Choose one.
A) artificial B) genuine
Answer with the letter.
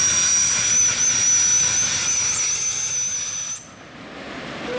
B